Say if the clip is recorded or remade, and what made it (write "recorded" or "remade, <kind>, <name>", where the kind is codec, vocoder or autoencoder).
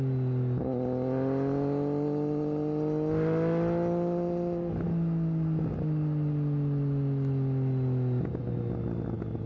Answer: recorded